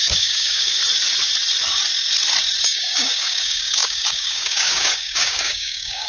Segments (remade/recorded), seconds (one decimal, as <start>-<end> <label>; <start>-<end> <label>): 0.0-0.8 remade; 0.8-2.6 recorded; 2.6-6.1 remade